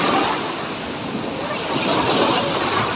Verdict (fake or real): real